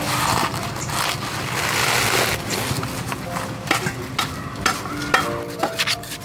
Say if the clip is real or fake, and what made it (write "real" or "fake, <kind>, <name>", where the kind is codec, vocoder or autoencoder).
real